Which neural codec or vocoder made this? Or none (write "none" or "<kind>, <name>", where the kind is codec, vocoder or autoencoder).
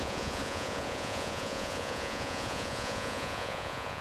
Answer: vocoder, Vocos